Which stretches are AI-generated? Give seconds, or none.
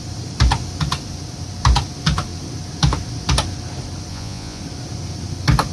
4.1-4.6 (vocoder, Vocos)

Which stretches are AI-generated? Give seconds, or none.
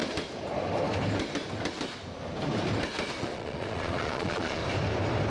3.2-4.6 (vocoder, Vocos)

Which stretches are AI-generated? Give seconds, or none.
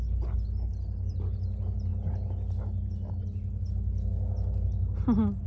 none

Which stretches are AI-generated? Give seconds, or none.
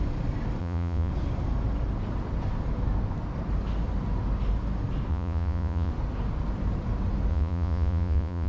0.6-1.1 (vocoder, Vocos); 5.1-5.9; 7.3-8.5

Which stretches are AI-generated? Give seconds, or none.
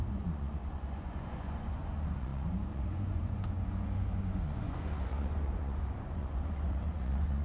0.0-7.4 (vocoder, Vocos)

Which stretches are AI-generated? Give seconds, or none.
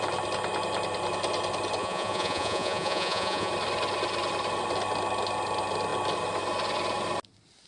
1.8-3.5 (vocoder, Vocos)